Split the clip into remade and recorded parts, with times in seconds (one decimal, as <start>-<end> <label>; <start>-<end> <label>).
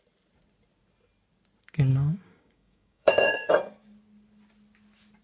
0.0-1.9 recorded; 1.9-3.5 remade; 3.5-5.2 recorded